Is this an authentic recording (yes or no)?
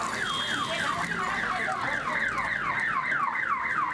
yes